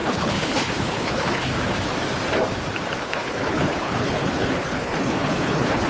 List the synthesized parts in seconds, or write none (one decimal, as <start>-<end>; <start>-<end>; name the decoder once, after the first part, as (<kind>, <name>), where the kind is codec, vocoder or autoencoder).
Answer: 0.0-1.5 (codec, HILCodec); 3.0-5.9